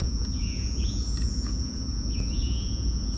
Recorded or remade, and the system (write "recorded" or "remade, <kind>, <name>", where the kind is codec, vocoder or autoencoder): remade, vocoder, Vocos